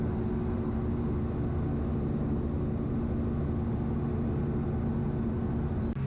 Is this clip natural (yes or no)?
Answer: yes